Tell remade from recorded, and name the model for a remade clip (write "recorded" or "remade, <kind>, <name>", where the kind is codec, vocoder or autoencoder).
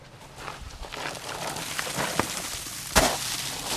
remade, vocoder, BigVGAN v2